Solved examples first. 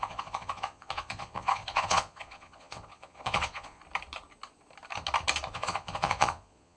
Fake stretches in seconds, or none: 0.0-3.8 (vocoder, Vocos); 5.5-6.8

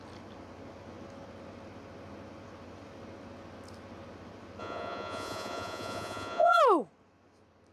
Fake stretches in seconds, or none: 4.6-6.6 (vocoder, Vocos)

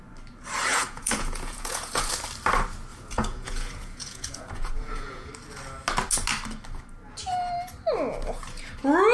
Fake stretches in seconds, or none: 0.7-2.1 (vocoder, Vocos); 2.9-5.3

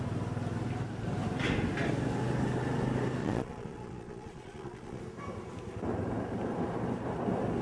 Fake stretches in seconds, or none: 3.2-5.0 (vocoder, Vocos)

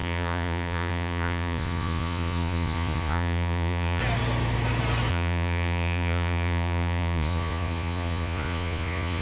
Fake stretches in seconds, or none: 0.0-4.0 (vocoder, Vocos); 5.1-9.2